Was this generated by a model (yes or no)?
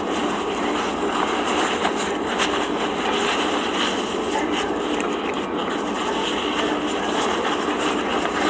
no